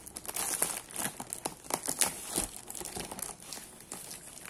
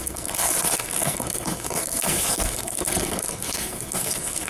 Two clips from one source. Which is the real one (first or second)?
first